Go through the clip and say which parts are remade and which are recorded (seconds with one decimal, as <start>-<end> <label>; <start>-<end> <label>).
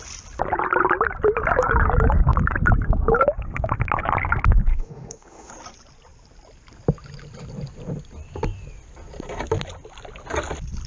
0.0-4.7 recorded; 4.7-5.5 remade; 5.5-10.9 recorded